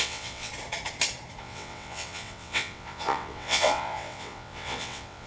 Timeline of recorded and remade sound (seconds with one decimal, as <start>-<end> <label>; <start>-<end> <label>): 0.0-0.5 remade; 0.5-1.4 recorded; 1.4-5.3 remade